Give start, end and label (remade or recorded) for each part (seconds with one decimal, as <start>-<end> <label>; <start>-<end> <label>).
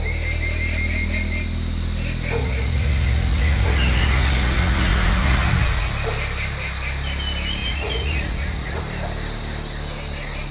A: 0.0-2.4 recorded; 2.4-5.9 remade; 5.9-7.6 recorded; 7.6-8.8 remade; 8.8-10.5 recorded